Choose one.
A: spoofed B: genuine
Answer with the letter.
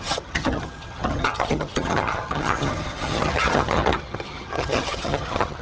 A